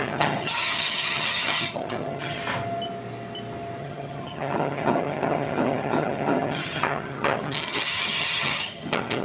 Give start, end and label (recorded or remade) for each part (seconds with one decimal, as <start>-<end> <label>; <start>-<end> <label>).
0.0-2.4 remade; 2.4-3.8 recorded; 3.8-9.2 remade